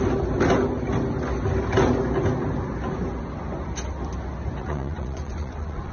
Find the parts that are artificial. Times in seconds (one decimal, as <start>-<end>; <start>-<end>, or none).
4.6-5.9